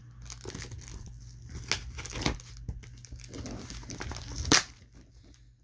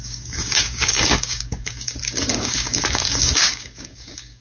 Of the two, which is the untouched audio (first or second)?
first